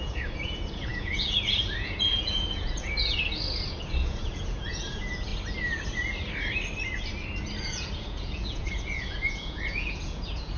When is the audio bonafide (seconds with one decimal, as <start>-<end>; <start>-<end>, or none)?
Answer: 5.3-7.6